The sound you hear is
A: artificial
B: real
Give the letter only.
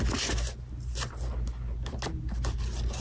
B